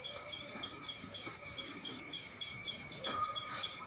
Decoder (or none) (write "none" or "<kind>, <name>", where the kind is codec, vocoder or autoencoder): codec, DAC